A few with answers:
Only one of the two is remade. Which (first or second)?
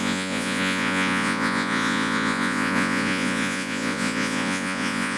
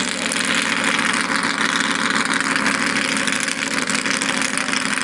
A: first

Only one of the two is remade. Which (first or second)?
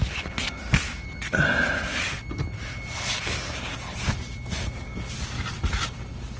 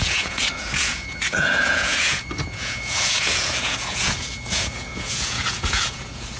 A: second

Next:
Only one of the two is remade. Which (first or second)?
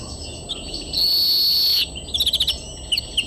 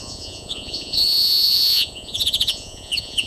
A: second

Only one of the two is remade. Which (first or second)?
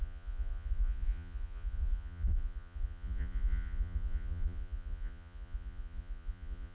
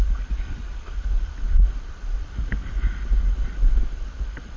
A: first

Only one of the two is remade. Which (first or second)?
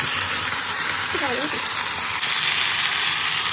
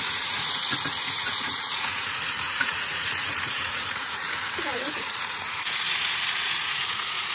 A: second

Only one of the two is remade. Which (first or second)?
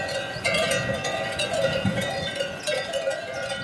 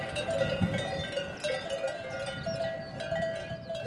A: first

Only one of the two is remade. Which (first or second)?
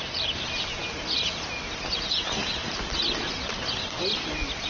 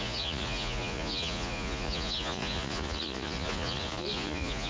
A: second